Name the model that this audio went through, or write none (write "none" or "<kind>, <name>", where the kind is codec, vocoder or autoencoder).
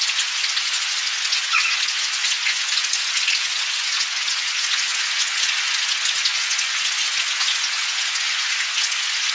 vocoder, Vocos